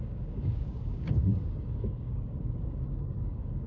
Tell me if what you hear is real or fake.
fake